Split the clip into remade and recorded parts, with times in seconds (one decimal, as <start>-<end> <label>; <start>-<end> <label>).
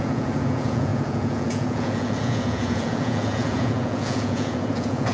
0.0-5.1 remade